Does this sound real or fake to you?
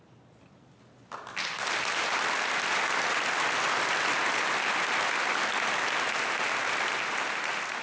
real